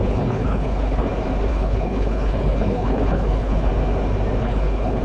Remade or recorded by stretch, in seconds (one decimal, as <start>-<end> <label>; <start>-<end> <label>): 0.0-1.1 remade; 1.1-1.5 recorded; 1.5-3.7 remade; 3.7-4.4 recorded; 4.4-5.0 remade